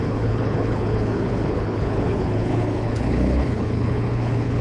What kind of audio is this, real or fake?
fake